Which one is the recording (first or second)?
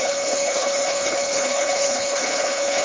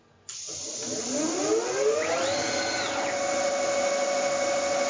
second